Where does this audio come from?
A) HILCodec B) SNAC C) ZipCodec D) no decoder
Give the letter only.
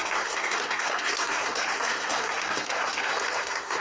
B